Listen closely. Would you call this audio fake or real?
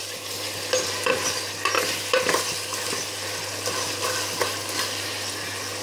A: real